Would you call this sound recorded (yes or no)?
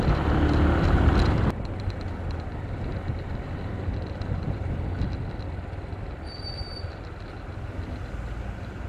yes